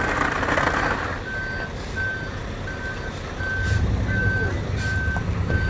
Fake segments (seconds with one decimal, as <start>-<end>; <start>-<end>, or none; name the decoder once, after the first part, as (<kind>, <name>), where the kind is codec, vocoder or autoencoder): none